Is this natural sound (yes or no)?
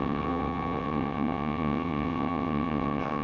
no